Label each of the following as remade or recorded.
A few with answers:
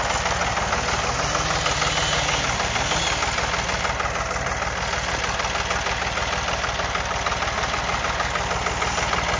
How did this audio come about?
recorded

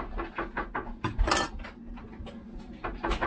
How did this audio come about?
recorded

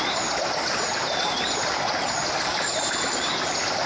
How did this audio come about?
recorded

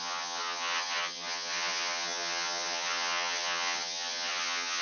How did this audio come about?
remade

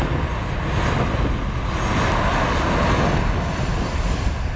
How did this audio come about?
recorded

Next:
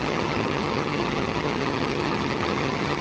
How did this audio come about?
remade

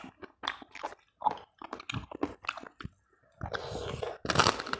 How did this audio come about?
recorded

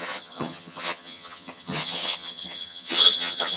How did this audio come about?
remade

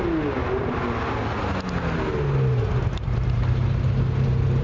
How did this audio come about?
recorded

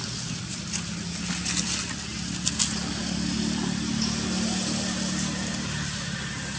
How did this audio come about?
recorded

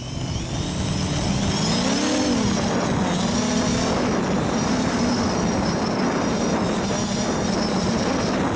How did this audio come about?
recorded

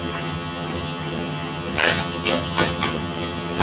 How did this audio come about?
remade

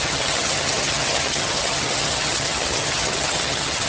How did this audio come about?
remade